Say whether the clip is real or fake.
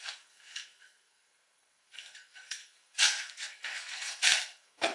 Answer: fake